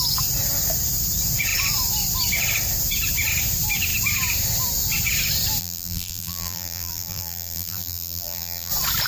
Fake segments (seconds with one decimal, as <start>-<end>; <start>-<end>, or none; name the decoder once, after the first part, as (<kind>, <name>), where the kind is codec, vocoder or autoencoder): 5.6-8.7 (vocoder, BigVGAN v2)